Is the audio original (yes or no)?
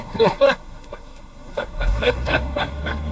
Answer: no